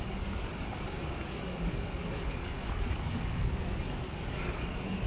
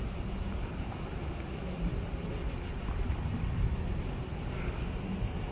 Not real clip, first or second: first